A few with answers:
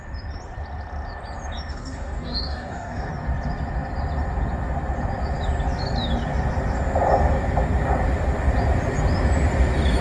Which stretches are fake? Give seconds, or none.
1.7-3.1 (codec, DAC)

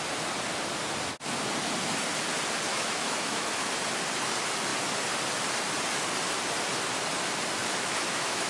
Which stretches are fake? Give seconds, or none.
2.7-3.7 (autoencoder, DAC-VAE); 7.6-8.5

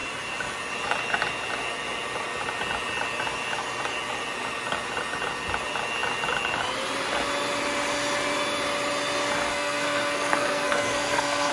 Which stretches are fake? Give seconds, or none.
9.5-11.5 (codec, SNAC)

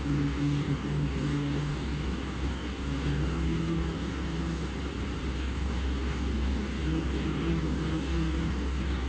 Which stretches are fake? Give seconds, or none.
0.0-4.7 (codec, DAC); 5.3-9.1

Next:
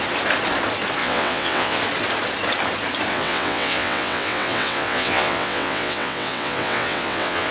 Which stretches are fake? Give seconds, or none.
1.0-1.8 (vocoder, WaveNeXt); 3.1-7.5

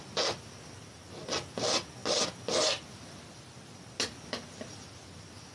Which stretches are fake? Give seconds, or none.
none